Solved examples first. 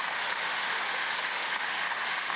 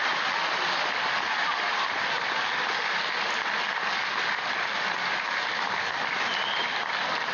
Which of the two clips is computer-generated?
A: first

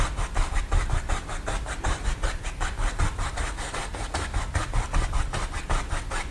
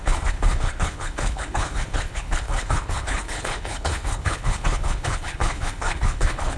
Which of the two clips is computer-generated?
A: second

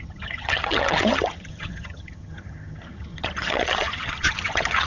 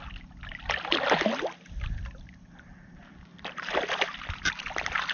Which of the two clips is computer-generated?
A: first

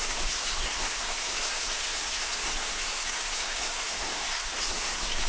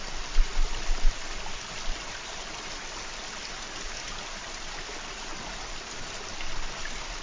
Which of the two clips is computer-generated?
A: first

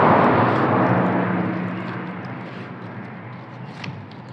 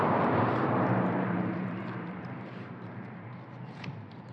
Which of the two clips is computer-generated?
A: second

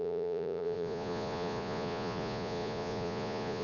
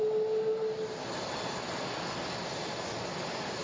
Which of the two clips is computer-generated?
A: first